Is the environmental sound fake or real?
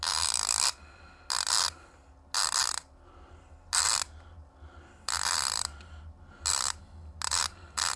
real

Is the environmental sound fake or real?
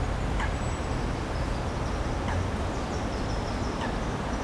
real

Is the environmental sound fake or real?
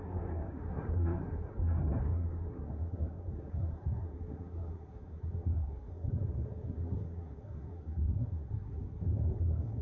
fake